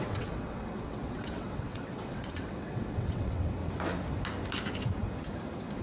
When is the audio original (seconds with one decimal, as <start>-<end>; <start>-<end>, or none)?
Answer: 3.6-5.8